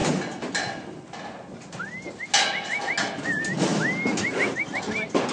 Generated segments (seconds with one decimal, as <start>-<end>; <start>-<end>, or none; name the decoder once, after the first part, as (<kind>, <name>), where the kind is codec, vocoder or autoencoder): none